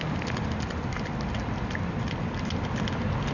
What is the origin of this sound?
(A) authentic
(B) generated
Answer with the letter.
A